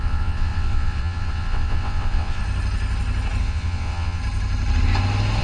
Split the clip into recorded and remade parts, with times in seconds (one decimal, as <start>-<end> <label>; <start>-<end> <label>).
0.0-2.4 remade; 2.4-3.4 recorded; 3.4-4.2 remade; 4.2-5.4 recorded